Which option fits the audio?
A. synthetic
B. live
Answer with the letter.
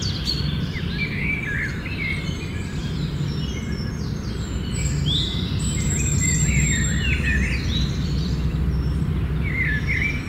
A